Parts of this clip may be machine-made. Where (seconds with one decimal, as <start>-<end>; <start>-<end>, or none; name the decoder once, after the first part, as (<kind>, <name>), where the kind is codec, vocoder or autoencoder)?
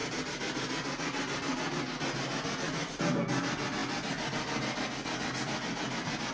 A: none